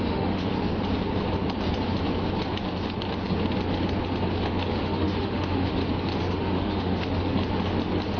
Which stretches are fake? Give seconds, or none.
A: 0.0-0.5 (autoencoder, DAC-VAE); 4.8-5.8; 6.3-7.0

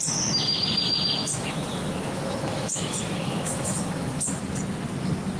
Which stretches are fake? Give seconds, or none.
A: 1.2-4.4 (autoencoder, DAC-VAE)

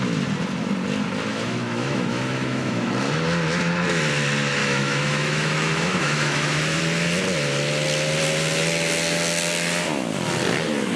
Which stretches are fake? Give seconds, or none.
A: 1.3-2.9 (autoencoder, DAC-VAE); 4.6-6.8

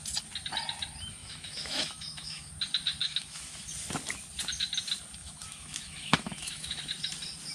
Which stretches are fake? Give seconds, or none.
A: 1.2-2.5 (autoencoder, DAC-VAE); 3.0-3.7; 5.2-6.8

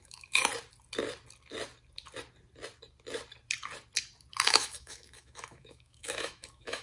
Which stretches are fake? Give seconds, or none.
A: 0.0-0.4 (autoencoder, DAC-VAE); 4.5-6.8

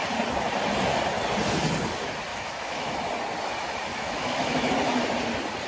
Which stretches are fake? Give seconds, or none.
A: 2.3-2.9 (autoencoder, DAC-VAE); 3.9-4.7

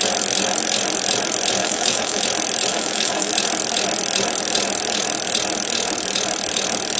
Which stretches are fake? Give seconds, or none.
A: 1.6-2.2 (autoencoder, DAC-VAE); 2.7-3.3